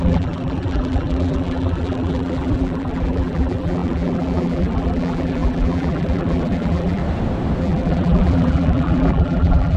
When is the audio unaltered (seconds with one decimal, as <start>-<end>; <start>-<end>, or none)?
7.0-7.6